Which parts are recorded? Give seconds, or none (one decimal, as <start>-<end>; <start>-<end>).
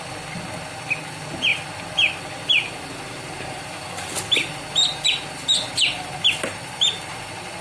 0.0-7.6